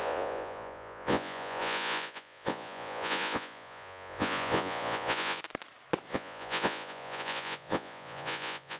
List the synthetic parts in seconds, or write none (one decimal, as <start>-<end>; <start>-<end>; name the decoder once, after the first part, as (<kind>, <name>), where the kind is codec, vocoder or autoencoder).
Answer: 0.0-5.4 (vocoder, Vocos); 6.1-8.8